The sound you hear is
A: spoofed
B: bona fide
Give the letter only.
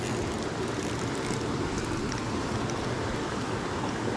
B